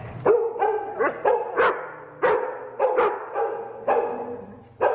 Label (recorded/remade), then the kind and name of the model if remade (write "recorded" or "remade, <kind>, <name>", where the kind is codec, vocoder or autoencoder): recorded